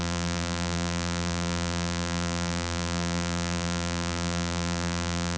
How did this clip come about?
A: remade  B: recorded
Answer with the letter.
A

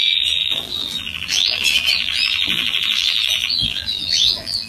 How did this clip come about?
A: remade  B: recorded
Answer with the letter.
A